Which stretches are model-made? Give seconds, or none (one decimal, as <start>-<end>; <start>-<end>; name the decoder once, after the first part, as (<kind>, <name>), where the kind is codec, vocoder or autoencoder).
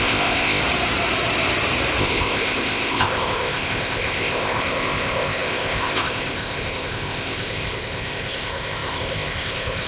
0.0-0.6 (codec, ZipCodec); 2.0-9.9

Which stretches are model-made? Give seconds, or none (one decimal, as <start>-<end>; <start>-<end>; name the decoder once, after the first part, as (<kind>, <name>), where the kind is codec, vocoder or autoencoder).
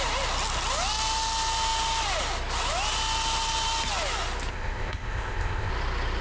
4.5-5.7 (codec, ZipCodec)